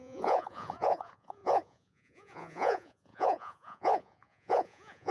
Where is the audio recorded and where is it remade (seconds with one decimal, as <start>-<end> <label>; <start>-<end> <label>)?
0.0-5.1 remade